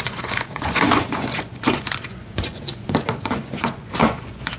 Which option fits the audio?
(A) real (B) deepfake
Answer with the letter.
B